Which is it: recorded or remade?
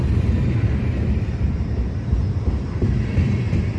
recorded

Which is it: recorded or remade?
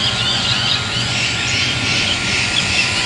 remade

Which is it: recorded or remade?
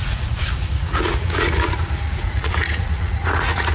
remade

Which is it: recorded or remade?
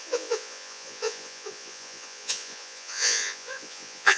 remade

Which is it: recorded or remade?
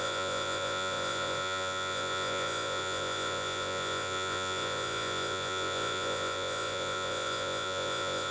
remade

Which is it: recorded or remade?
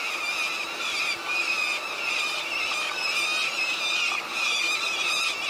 recorded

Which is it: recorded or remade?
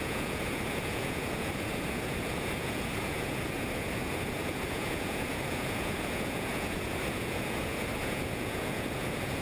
remade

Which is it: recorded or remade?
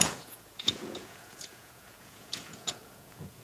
remade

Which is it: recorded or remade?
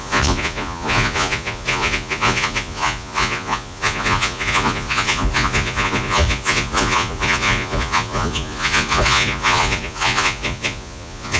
remade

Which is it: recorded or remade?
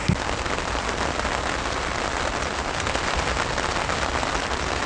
recorded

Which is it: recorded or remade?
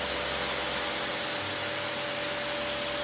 recorded